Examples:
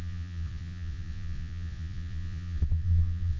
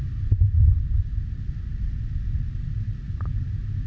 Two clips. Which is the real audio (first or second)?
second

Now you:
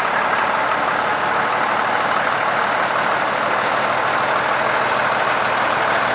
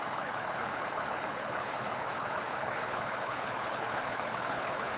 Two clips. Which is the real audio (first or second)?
first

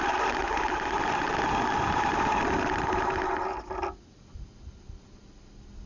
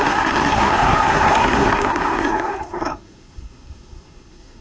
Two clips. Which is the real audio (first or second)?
first